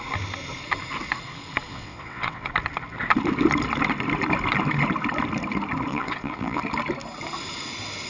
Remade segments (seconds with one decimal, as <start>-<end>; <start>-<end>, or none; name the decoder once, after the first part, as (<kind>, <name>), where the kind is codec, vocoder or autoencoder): 1.7-2.5 (vocoder, WaveNeXt); 5.9-6.6